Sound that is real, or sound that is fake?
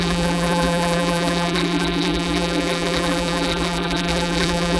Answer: fake